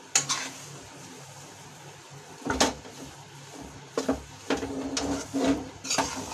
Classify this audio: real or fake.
real